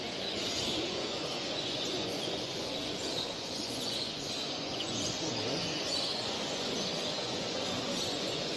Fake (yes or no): yes